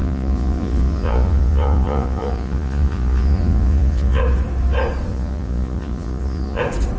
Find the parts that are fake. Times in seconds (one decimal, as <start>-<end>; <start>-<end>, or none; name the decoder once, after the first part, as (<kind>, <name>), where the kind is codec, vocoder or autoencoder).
0.0-4.2 (vocoder, Vocos); 5.1-6.6

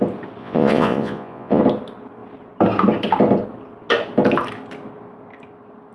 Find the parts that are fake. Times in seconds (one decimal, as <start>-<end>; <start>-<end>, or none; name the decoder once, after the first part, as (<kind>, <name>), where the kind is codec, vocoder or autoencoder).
0.4-1.6 (vocoder, Vocos)

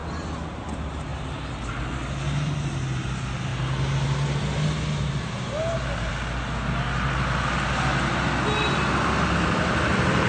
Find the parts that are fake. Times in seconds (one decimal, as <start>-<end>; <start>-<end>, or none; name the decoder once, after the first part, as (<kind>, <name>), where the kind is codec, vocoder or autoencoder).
none